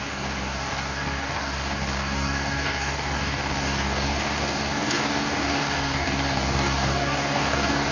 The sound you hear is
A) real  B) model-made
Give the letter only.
B